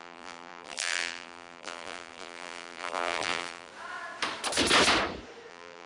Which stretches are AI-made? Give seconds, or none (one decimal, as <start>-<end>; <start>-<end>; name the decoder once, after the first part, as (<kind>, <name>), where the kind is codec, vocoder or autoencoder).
0.0-3.7 (vocoder, BigVGAN v2); 5.5-5.9